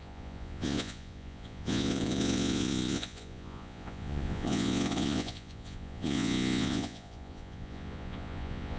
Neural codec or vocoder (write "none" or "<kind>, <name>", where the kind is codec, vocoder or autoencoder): vocoder, Vocos